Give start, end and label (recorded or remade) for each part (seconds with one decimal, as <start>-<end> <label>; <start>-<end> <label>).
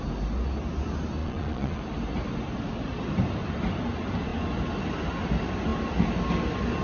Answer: 0.0-1.2 recorded; 1.2-1.8 remade; 1.8-6.8 recorded